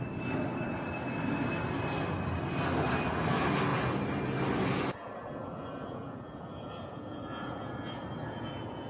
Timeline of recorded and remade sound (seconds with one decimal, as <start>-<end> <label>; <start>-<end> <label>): 0.0-4.9 recorded; 4.9-8.9 remade